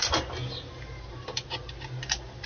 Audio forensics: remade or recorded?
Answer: recorded